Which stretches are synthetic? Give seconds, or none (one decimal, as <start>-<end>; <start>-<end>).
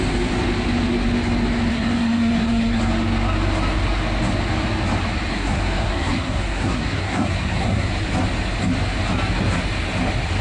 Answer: 1.7-2.8; 5.3-7.9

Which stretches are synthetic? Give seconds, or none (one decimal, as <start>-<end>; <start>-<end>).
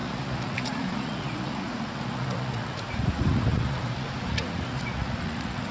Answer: 0.0-5.7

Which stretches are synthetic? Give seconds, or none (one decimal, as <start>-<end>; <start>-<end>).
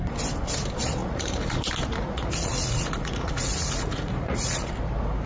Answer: 1.0-1.6; 2.0-4.7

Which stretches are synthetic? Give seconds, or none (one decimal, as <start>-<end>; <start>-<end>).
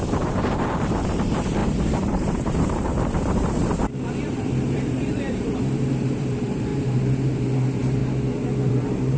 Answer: 0.0-8.0; 8.7-9.2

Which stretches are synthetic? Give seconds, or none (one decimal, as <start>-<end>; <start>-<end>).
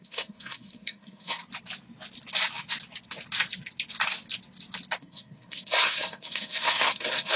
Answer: 0.0-1.4; 5.0-7.4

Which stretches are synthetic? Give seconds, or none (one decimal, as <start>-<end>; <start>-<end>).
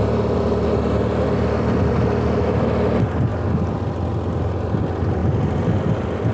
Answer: none